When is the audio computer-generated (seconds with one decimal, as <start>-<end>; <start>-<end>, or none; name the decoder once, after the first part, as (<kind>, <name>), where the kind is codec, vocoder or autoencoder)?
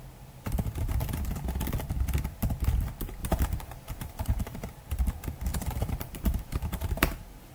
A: 3.2-4.8 (vocoder, BigVGAN v2); 5.5-6.9